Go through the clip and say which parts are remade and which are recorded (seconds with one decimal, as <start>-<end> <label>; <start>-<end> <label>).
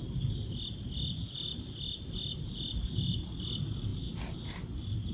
0.0-5.1 recorded